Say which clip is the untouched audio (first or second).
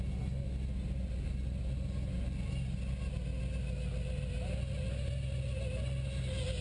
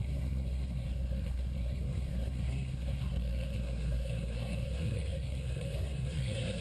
first